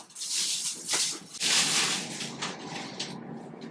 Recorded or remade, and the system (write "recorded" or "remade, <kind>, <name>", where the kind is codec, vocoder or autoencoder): recorded